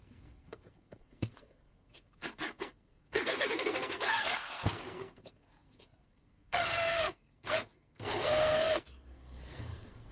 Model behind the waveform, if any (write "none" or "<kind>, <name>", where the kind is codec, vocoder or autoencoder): codec, SNAC